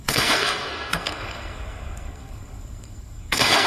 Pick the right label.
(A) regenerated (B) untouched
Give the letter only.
A